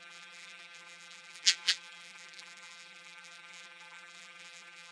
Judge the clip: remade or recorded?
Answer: remade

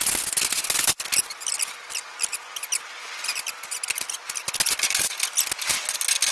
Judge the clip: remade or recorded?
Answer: recorded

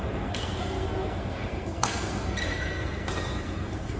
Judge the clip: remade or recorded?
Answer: remade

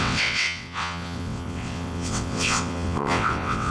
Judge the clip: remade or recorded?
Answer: remade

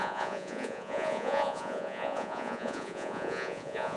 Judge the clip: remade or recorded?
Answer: remade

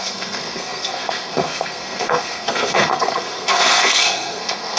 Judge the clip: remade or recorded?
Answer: remade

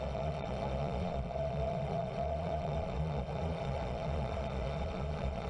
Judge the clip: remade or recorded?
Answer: remade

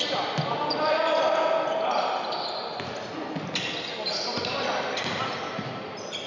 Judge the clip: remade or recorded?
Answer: recorded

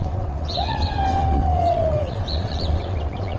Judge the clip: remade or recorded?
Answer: remade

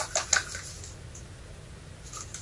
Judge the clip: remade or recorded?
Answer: recorded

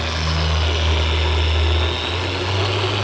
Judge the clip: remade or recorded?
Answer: recorded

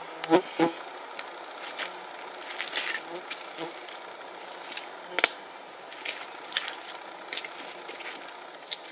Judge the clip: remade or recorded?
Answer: recorded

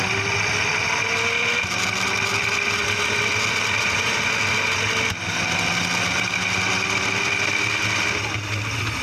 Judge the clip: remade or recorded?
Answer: recorded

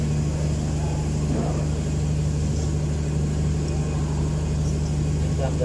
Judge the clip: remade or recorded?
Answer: recorded